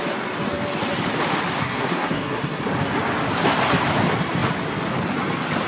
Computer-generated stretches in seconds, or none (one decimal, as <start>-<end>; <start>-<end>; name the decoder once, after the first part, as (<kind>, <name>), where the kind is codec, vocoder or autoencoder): 1.6-2.6 (codec, SNAC)